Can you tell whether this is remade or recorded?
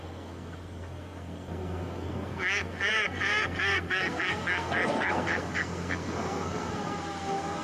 remade